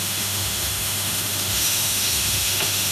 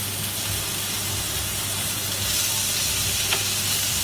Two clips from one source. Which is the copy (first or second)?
first